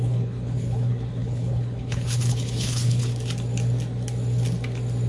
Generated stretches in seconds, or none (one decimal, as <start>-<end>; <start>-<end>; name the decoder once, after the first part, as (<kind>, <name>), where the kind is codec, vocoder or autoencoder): 0.0-3.1 (codec, HILCodec)